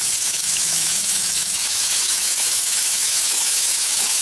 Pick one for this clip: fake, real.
fake